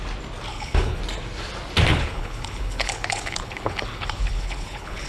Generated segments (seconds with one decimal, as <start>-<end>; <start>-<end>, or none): 0.5-1.0; 1.9-5.1